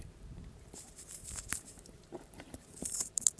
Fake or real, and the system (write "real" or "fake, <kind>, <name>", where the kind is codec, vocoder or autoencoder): fake, vocoder, BigVGAN v2